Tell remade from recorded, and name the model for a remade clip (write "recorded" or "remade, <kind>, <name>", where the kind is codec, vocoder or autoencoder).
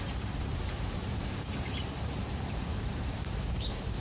remade, vocoder, BigVGAN v2